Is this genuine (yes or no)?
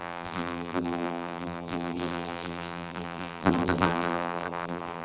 no